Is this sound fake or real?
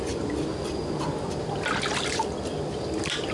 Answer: real